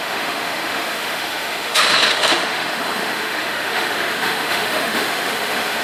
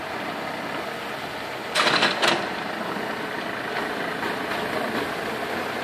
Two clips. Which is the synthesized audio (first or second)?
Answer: first